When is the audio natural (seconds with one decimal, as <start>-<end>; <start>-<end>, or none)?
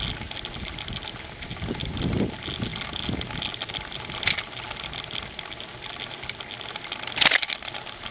0.0-8.1